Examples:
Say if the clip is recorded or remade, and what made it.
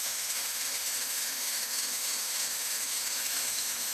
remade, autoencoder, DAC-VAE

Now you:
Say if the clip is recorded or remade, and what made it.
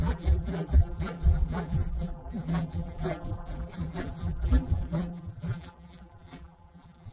remade, vocoder, BigVGAN v2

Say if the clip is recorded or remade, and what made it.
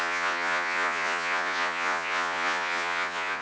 remade, vocoder, Vocos